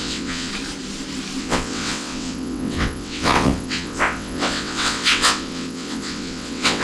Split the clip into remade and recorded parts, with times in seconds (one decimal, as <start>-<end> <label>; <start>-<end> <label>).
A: 0.0-0.5 remade; 0.5-1.4 recorded; 1.4-6.8 remade